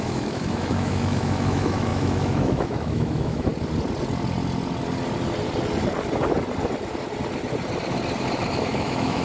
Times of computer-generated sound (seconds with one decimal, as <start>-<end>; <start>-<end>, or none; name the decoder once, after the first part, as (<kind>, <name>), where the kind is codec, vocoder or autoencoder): 0.0-3.5 (autoencoder, DAC-VAE); 8.7-9.2